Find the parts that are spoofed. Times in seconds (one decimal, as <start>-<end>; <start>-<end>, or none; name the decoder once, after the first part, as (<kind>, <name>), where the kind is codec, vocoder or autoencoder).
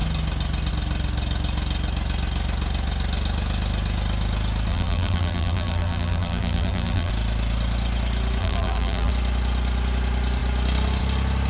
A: 4.7-7.1 (vocoder, BigVGAN v2); 8.4-9.1